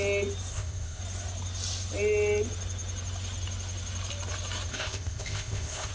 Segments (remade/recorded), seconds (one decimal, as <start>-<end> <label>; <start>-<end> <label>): 0.0-0.5 recorded; 0.5-1.0 remade; 1.0-4.7 recorded; 4.7-5.9 remade

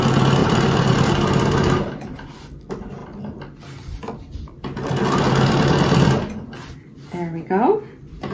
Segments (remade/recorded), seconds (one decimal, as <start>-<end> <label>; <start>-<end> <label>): 0.0-0.4 recorded; 0.4-2.1 remade; 2.1-8.3 recorded

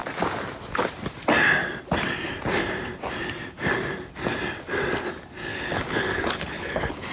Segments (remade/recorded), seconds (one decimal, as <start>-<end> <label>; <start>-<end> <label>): 0.0-5.5 recorded; 5.5-7.1 remade

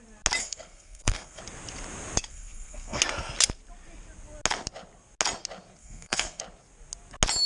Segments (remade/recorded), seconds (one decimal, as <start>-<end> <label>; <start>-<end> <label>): 0.0-0.4 recorded; 0.4-1.4 remade; 1.4-2.3 recorded; 2.3-3.0 remade; 3.0-5.8 recorded; 5.8-6.4 remade; 6.4-7.5 recorded

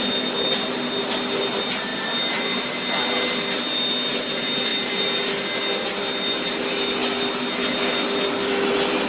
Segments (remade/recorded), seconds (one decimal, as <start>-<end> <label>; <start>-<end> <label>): 0.0-9.1 recorded

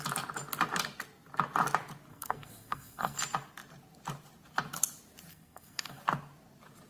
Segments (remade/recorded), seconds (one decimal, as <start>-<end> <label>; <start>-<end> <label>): 0.0-2.1 recorded; 2.1-3.2 remade; 3.2-5.3 recorded; 5.3-6.0 remade; 6.0-6.9 recorded

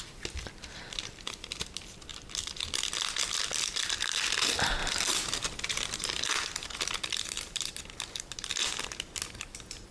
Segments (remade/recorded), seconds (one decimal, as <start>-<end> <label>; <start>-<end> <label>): 0.0-9.9 recorded